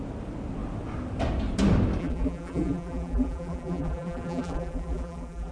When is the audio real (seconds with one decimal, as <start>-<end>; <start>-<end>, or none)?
0.0-2.0